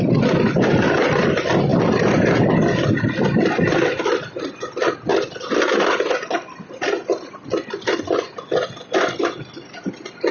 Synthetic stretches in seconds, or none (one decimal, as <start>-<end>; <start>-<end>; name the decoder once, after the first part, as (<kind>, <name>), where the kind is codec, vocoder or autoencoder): none

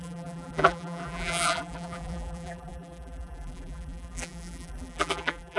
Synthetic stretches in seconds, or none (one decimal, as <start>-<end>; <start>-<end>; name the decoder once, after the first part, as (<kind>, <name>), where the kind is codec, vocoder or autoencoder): 0.0-5.6 (vocoder, BigVGAN v2)

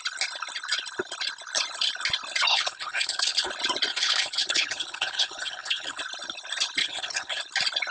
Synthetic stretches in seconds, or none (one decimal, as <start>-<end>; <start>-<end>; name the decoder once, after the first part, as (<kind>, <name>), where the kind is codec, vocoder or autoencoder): 2.5-3.5 (codec, HILCodec); 3.9-6.0; 6.8-7.4

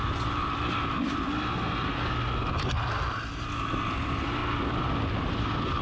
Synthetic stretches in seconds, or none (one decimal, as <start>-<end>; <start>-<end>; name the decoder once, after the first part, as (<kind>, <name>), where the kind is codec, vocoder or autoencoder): none

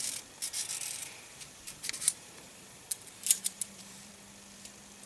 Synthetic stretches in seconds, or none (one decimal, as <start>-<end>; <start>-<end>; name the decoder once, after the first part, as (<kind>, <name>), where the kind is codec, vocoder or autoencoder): 1.0-4.1 (vocoder, BigVGAN v2)